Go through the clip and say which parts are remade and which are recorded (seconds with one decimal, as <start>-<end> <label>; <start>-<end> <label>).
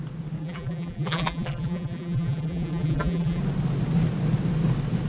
0.0-0.4 recorded; 0.4-3.4 remade; 3.4-5.1 recorded